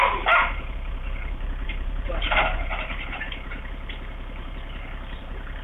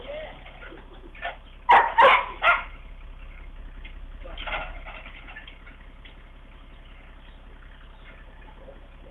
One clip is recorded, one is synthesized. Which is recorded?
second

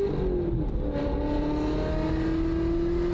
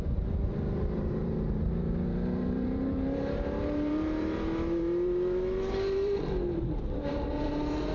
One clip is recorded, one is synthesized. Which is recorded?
first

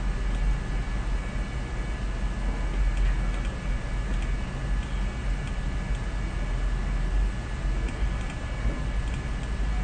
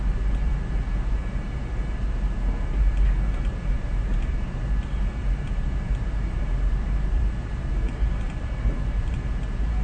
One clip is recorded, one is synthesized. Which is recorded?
first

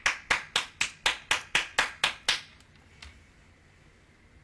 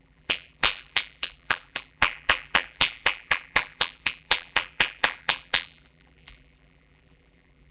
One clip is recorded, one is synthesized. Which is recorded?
first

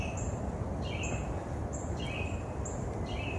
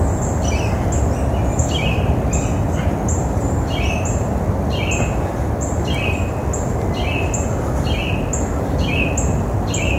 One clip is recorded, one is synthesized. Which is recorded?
second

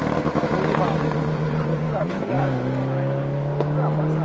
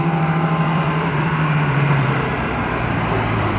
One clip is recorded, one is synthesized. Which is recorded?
first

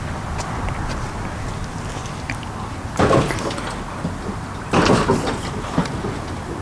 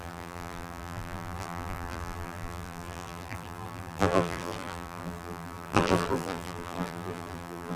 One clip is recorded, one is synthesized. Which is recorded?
first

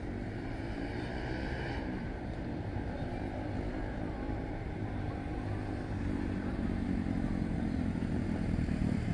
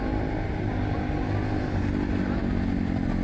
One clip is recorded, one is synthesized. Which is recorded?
second